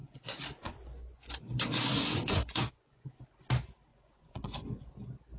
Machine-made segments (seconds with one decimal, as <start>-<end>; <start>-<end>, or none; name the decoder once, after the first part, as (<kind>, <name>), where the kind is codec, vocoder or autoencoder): 0.0-3.2 (vocoder, Vocos); 3.9-4.9